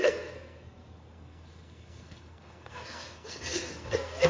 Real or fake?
fake